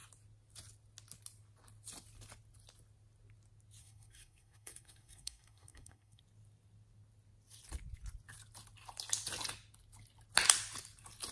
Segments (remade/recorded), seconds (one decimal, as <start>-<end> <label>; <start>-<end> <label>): 0.0-3.8 recorded; 3.8-6.2 remade; 6.2-11.3 recorded